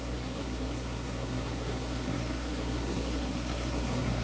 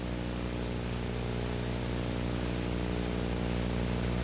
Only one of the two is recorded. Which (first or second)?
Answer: second